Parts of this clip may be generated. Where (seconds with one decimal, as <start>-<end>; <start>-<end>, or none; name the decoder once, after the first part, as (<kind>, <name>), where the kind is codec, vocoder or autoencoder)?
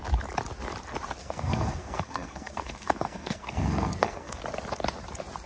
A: 1.2-4.4 (codec, SNAC)